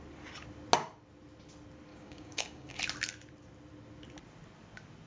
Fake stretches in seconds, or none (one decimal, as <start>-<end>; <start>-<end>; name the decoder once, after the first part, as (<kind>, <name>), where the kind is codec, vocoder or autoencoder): 1.9-2.8 (codec, DAC)